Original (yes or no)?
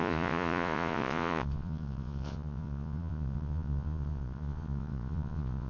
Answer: no